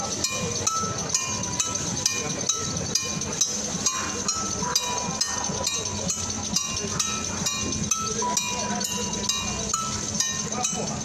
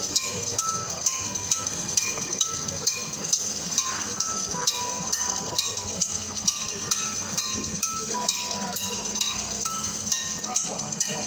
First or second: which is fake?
second